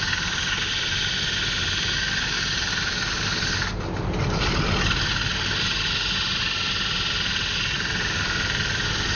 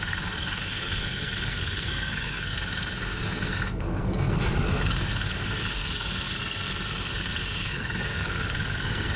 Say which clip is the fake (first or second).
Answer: second